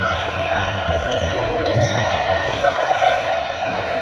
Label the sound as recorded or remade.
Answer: remade